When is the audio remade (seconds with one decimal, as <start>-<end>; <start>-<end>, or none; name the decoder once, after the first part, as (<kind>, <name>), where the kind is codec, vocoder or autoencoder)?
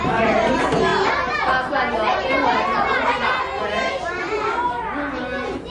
none